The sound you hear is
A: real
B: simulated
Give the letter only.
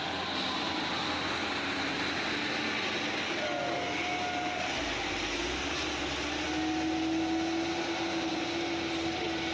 A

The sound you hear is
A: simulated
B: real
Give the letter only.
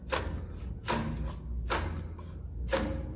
B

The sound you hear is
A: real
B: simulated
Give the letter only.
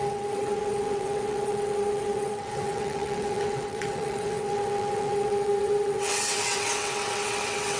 B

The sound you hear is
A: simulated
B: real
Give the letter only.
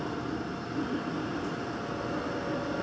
B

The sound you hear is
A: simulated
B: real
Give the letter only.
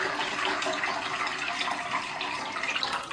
B